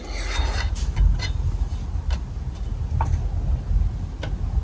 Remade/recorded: recorded